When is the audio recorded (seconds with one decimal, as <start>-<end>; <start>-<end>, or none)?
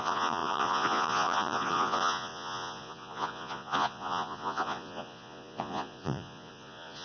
none